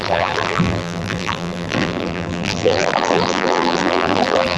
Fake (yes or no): yes